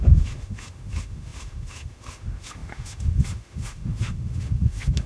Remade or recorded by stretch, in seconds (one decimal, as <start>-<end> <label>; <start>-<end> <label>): 0.0-5.1 remade